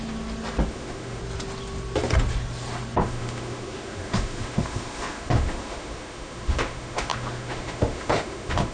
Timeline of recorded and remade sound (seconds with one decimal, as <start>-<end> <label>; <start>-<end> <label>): 0.0-0.7 recorded; 0.7-1.2 remade; 1.2-3.0 recorded; 3.0-8.7 remade